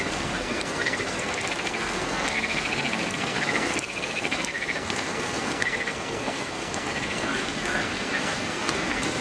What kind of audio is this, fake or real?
fake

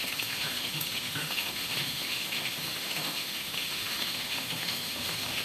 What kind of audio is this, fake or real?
fake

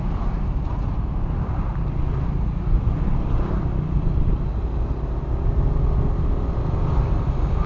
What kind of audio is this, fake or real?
real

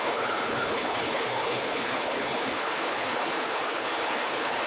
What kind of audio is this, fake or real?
fake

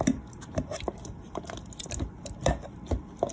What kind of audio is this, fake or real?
real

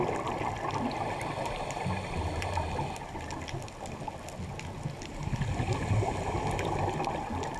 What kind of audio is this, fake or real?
real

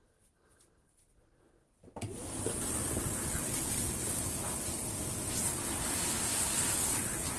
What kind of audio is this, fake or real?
real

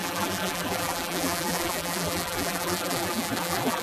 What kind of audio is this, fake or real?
fake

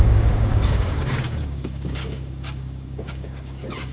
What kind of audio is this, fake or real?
fake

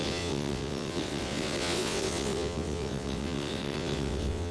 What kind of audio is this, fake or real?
fake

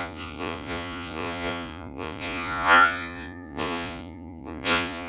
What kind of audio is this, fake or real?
fake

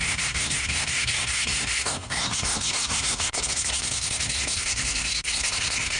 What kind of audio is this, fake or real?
fake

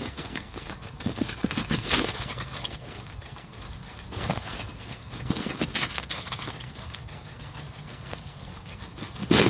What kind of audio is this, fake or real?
fake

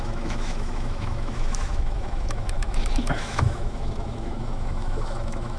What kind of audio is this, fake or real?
fake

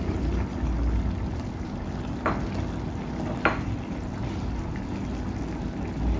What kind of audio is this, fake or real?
real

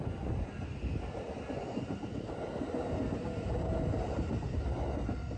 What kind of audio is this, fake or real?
real